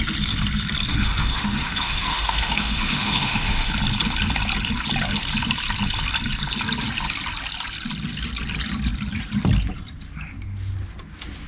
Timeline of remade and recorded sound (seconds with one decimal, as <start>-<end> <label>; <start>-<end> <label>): 0.0-0.9 recorded; 0.9-3.7 remade; 3.7-11.5 recorded